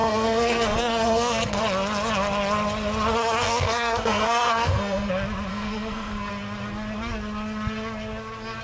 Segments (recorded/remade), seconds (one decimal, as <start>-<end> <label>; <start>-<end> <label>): 0.0-1.6 remade; 1.6-3.2 recorded; 3.2-5.1 remade; 5.1-5.5 recorded; 5.5-6.3 remade; 6.3-8.6 recorded